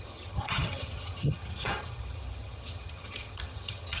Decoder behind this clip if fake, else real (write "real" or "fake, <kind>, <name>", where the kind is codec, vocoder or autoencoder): fake, vocoder, HiFi-GAN